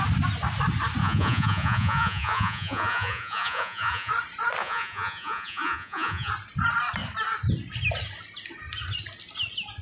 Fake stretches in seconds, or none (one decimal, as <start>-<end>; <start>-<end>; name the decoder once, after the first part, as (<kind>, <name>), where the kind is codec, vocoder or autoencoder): 1.0-4.1 (vocoder, Vocos); 4.6-6.3

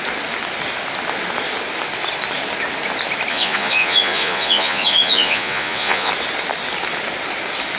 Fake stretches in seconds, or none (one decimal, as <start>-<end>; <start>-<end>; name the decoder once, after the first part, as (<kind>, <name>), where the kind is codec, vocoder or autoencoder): 3.3-6.1 (vocoder, Vocos)

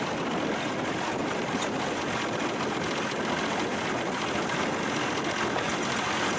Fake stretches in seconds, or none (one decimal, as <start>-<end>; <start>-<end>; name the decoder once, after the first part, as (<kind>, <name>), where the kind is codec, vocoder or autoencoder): 1.2-1.8 (vocoder, BigVGAN v2)